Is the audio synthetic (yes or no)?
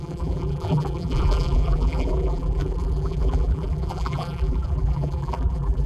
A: yes